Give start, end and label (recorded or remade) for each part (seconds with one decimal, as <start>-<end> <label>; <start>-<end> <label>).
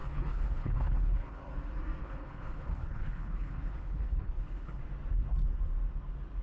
0.0-1.4 remade; 1.4-2.0 recorded; 2.0-4.8 remade; 4.8-6.4 recorded